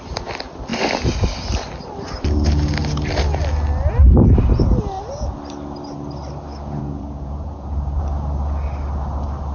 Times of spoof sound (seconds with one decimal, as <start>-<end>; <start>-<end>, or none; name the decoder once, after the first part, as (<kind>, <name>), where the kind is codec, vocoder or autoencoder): 6.8-8.0 (vocoder, Vocos)